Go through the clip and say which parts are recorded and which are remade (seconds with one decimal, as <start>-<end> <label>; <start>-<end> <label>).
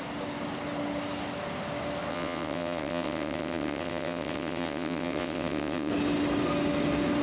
0.0-2.1 recorded; 2.1-5.9 remade; 5.9-7.2 recorded